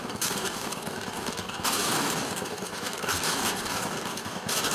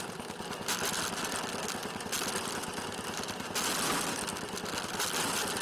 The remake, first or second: first